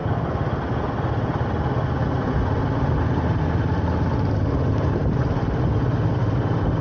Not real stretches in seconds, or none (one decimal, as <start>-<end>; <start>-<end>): none